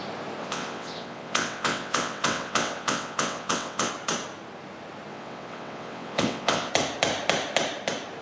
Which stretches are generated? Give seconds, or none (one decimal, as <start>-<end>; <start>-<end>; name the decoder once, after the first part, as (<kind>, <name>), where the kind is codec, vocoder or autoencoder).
0.4-3.9 (vocoder, WaveNeXt); 5.1-6.7